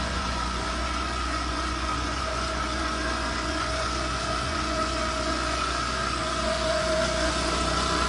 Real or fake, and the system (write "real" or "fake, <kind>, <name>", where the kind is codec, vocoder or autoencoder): fake, vocoder, Vocos